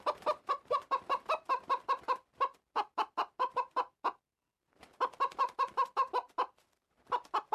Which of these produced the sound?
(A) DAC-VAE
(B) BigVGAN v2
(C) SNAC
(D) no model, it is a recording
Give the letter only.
D